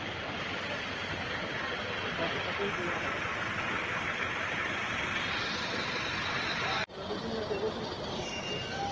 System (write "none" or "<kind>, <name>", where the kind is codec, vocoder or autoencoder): none